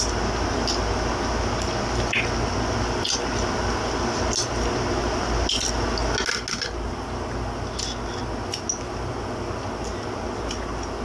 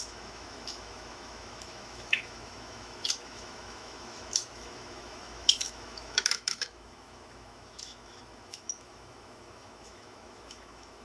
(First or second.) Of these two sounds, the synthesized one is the second